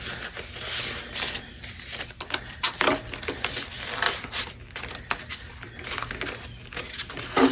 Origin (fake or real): real